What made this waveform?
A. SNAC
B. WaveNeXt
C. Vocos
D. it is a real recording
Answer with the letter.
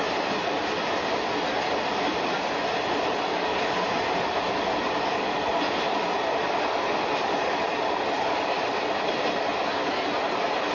D